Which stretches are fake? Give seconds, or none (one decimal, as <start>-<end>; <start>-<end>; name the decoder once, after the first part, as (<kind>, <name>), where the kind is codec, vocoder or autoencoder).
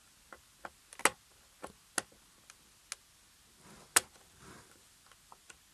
none